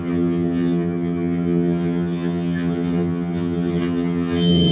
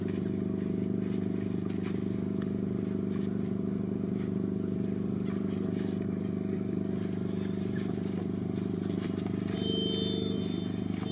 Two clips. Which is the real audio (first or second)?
second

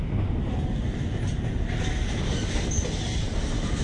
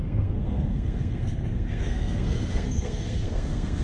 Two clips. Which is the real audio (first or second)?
first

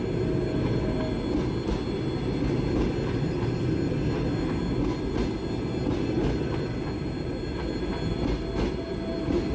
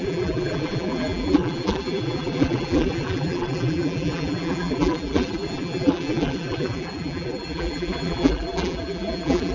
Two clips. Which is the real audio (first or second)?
first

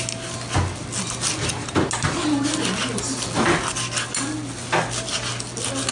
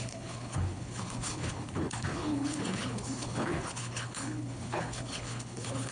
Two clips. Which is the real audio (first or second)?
first